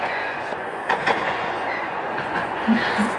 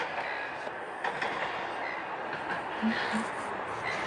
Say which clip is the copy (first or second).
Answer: first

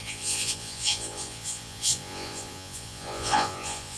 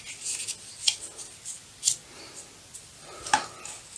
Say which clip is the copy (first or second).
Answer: first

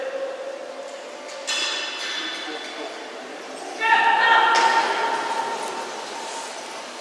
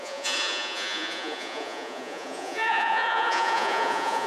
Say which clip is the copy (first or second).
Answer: second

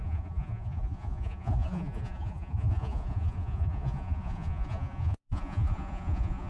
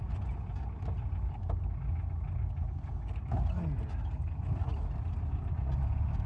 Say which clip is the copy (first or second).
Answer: first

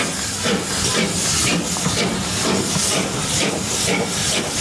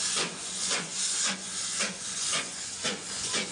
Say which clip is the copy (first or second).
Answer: second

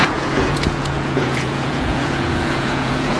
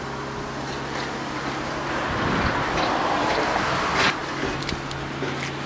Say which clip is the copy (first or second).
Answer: first